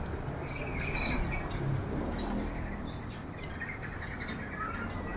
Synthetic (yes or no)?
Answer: no